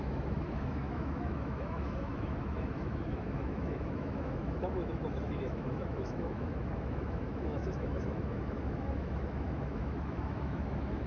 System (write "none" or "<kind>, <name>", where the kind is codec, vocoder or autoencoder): autoencoder, DAC-VAE